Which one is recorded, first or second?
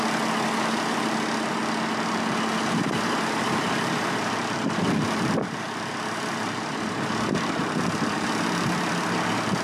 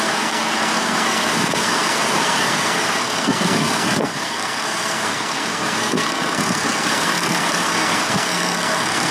first